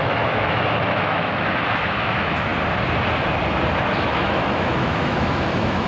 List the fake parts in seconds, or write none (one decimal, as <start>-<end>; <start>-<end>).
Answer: 0.0-2.5; 3.9-5.9